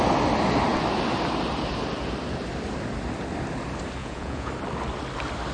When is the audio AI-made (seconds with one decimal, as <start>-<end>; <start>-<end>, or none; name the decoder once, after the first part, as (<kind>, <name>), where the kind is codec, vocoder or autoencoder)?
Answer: 4.0-4.5 (vocoder, Vocos)